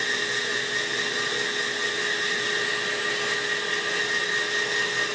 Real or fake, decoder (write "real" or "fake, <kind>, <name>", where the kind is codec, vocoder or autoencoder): real